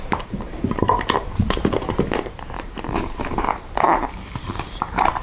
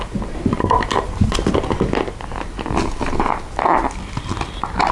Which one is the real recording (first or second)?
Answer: second